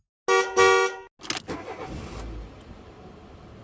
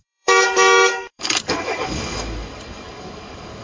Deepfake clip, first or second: second